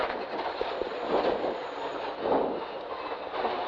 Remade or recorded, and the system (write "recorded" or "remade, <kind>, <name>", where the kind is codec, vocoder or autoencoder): recorded